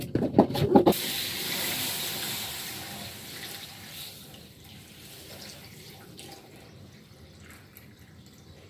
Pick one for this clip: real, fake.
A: fake